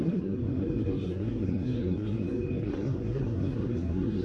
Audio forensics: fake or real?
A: fake